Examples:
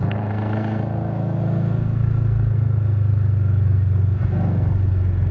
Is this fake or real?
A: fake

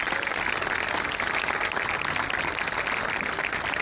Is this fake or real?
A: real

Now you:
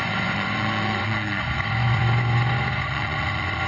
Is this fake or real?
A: fake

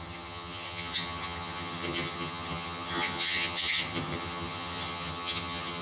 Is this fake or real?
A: fake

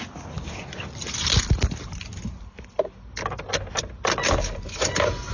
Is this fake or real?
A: real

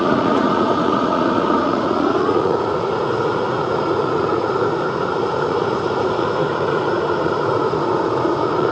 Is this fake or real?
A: fake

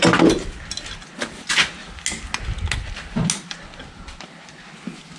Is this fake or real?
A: real